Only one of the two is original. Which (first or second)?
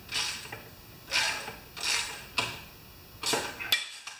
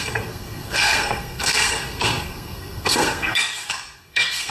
first